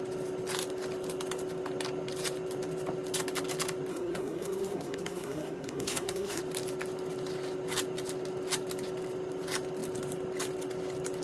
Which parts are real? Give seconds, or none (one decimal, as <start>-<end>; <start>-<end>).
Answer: 0.0-3.9; 6.4-11.2